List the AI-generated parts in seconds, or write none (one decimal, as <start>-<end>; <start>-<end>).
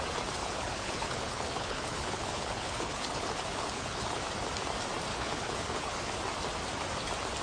0.4-4.2; 5.1-6.0